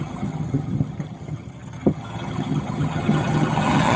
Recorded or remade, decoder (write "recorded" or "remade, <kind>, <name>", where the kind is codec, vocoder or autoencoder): remade, vocoder, HiFi-GAN